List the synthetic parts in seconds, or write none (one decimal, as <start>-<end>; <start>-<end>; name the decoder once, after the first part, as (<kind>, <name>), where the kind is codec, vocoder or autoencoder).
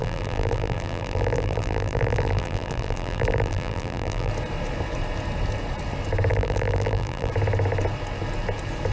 0.0-4.3 (vocoder, BigVGAN v2); 6.3-7.3